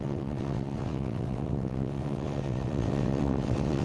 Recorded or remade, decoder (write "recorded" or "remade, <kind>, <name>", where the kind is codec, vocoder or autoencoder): remade, vocoder, WaveNeXt